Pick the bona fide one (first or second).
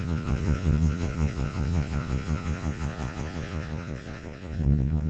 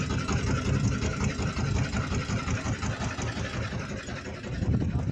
second